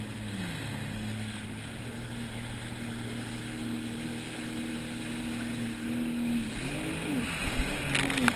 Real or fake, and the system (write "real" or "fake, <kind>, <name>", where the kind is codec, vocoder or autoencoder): real